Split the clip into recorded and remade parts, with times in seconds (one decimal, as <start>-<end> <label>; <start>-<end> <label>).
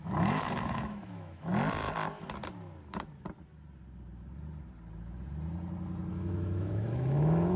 0.0-1.5 remade; 1.5-6.1 recorded; 6.1-7.6 remade